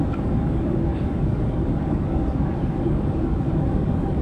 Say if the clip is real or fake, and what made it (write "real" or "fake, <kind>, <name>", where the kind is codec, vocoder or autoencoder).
fake, codec, DAC